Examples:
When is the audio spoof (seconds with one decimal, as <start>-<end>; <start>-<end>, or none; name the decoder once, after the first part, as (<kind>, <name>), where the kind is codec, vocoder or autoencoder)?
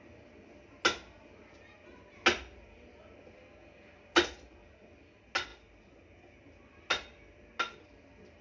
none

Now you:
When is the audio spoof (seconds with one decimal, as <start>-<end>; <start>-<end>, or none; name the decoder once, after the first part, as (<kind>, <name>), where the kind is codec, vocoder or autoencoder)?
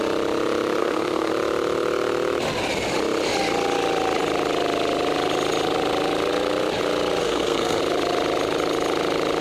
0.8-1.3 (codec, SNAC); 7.2-7.8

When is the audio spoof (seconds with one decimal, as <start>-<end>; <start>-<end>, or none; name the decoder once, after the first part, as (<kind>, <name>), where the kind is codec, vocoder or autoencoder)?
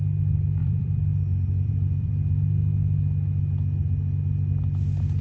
0.6-2.1 (vocoder, BigVGAN v2)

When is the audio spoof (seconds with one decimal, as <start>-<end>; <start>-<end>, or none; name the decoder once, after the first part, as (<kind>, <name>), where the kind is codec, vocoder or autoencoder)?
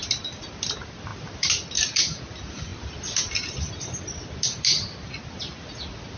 none